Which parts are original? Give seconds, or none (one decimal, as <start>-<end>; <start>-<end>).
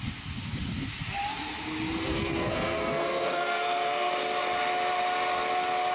0.0-2.1; 4.1-5.9